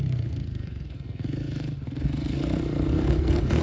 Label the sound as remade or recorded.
remade